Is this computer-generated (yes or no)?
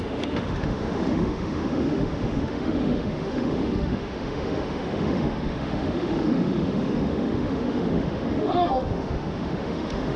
yes